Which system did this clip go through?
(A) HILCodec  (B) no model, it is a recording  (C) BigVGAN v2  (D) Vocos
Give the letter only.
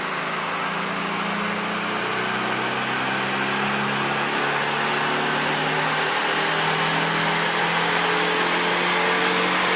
B